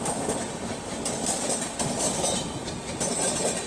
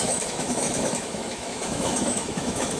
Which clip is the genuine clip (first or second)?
first